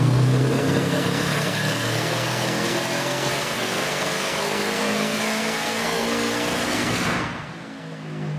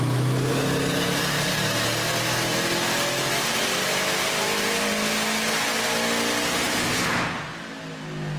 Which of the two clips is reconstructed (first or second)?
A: first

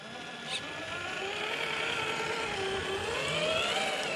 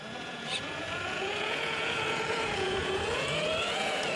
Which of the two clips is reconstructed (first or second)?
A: second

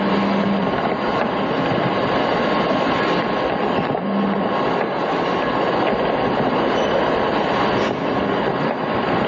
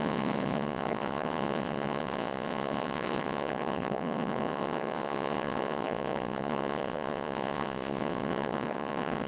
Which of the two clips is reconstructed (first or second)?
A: second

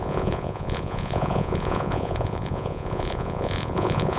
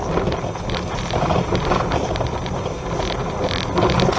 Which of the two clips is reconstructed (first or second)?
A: first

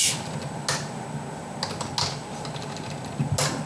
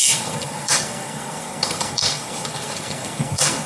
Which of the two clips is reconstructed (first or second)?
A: second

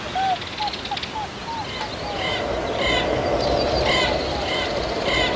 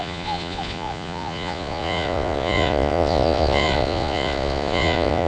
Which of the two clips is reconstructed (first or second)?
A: second